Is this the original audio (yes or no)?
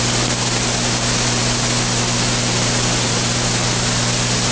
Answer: yes